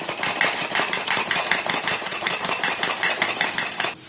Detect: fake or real real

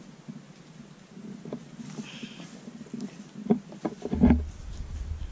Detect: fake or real real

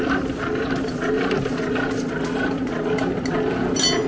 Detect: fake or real real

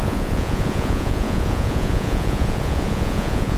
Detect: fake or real fake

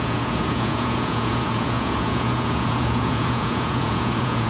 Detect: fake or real fake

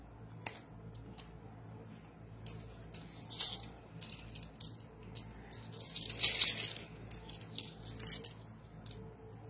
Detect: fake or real real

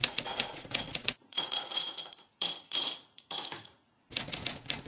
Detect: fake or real fake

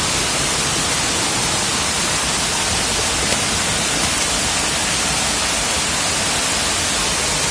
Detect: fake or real real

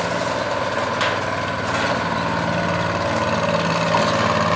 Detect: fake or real real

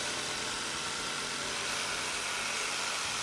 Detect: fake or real real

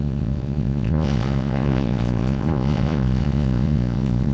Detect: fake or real fake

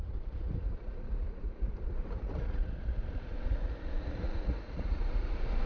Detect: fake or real fake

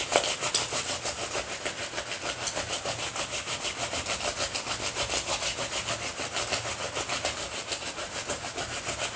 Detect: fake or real real